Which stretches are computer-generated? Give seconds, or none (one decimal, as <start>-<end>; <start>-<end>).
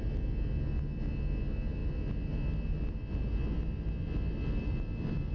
none